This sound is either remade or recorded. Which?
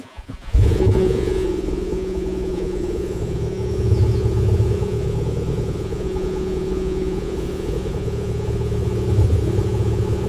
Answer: remade